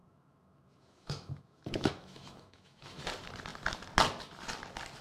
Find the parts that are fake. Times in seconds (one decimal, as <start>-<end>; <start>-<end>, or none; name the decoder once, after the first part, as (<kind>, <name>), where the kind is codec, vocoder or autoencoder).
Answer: 0.0-3.0 (autoencoder, DAC-VAE)